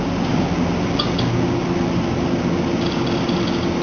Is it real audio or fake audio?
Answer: real